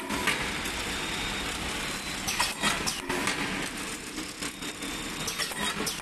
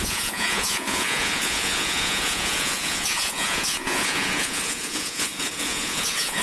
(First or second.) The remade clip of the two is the second